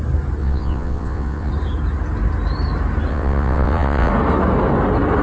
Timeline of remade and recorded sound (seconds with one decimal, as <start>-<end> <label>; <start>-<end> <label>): 0.0-0.4 recorded; 0.4-1.5 remade; 1.5-3.1 recorded; 3.1-4.1 remade; 4.1-5.2 recorded